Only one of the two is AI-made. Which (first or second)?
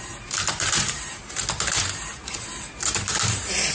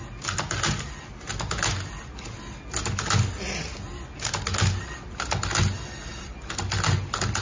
first